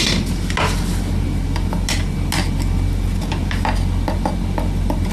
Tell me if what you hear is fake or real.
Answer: real